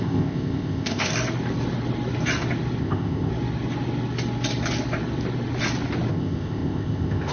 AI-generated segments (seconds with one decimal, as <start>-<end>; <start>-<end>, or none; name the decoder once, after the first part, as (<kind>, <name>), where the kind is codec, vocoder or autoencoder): 0.0-1.1 (codec, ZipCodec); 2.8-3.3; 6.1-7.3